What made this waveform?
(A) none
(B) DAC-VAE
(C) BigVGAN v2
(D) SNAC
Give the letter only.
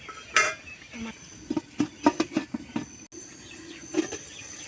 A